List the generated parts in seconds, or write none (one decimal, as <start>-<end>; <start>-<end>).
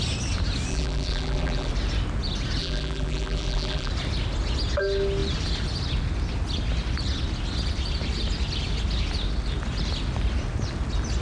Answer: 0.7-1.7; 2.6-3.9